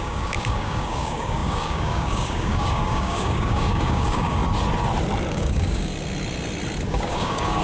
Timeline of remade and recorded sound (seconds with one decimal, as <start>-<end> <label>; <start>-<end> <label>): 0.0-4.4 remade; 4.4-5.3 recorded; 5.3-5.9 remade; 5.9-6.9 recorded; 6.9-7.6 remade